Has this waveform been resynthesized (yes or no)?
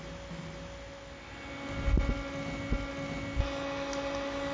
no